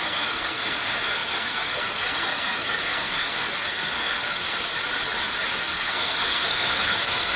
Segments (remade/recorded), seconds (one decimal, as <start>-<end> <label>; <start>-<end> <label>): 0.0-4.7 remade; 4.7-5.6 recorded; 5.6-7.4 remade